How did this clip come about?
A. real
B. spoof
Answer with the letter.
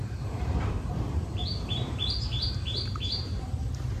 B